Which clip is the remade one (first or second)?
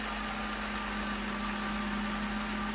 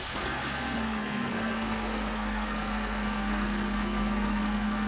second